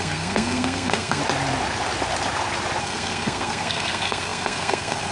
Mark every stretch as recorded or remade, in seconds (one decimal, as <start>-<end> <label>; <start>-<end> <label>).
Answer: 0.0-1.2 remade; 1.2-2.8 recorded; 2.8-5.1 remade